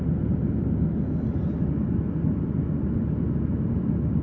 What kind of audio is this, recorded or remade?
recorded